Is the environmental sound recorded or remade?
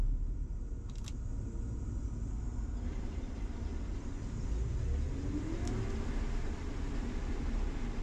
recorded